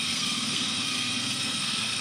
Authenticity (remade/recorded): remade